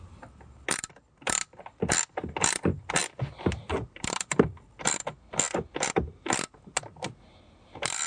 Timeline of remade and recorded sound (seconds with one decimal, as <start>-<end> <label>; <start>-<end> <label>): 0.0-8.1 recorded